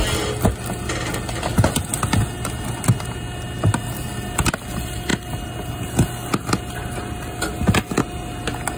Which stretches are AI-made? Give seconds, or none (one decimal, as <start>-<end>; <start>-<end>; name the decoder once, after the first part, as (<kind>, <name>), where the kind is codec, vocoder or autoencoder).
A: none